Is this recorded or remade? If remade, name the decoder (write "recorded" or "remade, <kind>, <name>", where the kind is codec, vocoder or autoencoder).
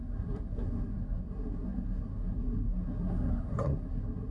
remade, codec, SNAC